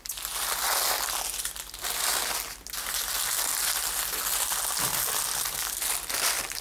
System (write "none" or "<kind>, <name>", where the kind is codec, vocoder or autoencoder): none